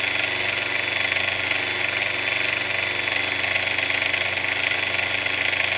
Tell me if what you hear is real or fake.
real